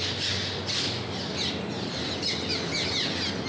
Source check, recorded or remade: recorded